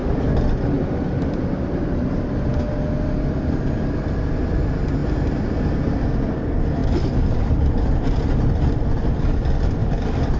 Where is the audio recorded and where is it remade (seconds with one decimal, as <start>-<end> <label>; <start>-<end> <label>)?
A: 0.0-2.4 remade; 2.4-5.0 recorded; 5.0-5.9 remade; 5.9-9.8 recorded; 9.8-10.4 remade